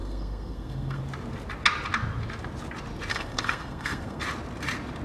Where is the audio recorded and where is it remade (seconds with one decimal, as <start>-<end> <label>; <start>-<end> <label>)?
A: 0.0-1.0 remade; 1.0-3.1 recorded; 3.1-4.2 remade; 4.2-5.0 recorded